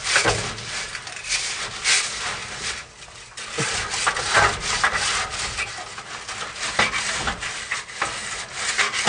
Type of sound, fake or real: real